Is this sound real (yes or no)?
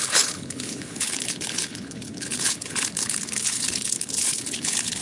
no